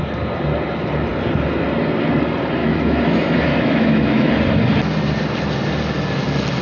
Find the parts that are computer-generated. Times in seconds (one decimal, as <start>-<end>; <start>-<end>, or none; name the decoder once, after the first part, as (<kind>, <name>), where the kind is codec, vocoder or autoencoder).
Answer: 2.6-4.3 (autoencoder, DAC-VAE)